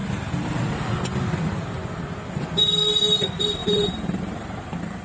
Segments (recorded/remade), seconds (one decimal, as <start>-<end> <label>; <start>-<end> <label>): 0.0-3.6 recorded; 3.6-4.6 remade; 4.6-5.0 recorded